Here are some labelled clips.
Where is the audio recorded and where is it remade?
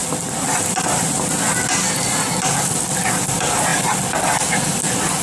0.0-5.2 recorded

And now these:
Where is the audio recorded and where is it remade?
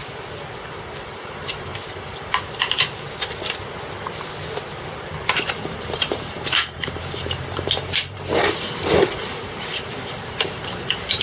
0.0-1.1 recorded; 1.1-1.7 remade; 1.7-5.5 recorded; 5.5-11.2 remade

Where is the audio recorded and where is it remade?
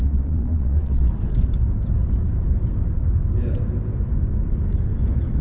0.0-1.1 remade; 1.1-5.4 recorded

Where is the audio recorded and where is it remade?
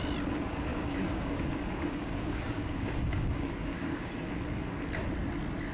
0.0-0.7 recorded; 0.7-4.1 remade; 4.1-5.7 recorded